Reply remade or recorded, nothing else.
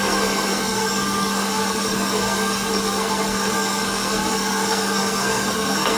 remade